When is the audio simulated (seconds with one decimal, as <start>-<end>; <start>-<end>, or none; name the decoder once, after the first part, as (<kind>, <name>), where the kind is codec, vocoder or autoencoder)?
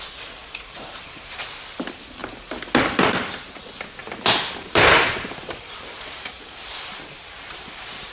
0.4-1.4 (vocoder, BigVGAN v2); 4.0-8.1